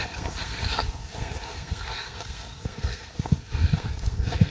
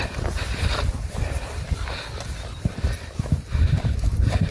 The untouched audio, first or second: second